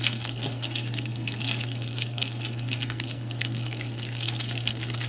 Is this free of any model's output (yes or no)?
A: no